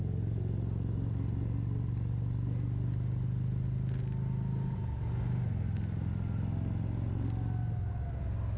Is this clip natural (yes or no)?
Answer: yes